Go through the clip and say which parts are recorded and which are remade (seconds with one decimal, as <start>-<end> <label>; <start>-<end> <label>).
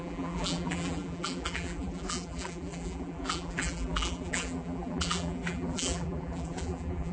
0.0-7.1 remade